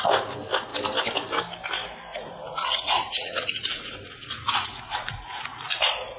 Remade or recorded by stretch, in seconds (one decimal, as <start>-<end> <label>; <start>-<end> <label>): 0.0-2.1 recorded; 2.1-5.8 remade; 5.8-6.2 recorded